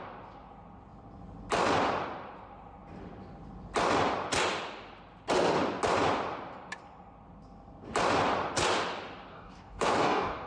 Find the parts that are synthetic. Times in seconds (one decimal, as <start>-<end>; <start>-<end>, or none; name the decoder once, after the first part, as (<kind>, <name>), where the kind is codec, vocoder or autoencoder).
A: 9.3-10.5 (codec, DAC)